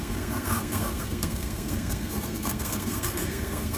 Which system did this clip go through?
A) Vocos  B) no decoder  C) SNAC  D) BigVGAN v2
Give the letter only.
C